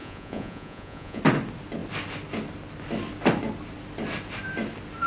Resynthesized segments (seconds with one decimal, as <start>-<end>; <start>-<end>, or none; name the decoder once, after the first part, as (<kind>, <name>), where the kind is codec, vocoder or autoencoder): 0.0-1.2 (vocoder, Vocos)